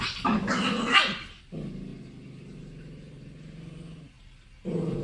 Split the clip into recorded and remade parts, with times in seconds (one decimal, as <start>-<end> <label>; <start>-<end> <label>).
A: 0.0-5.0 recorded